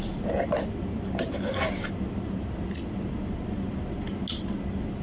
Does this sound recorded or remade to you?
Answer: recorded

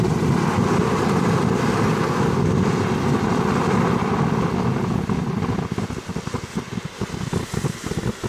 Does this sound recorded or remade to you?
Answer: recorded